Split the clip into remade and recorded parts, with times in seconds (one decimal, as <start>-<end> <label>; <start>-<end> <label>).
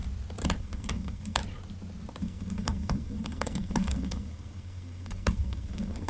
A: 0.0-0.6 recorded; 0.6-1.4 remade; 1.4-2.2 recorded; 2.2-6.1 remade